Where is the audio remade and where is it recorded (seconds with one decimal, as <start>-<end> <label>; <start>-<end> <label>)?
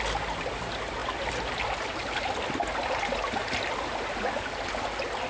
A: 0.0-5.3 recorded